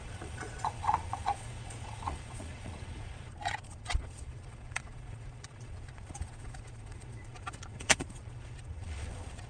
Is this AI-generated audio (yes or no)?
yes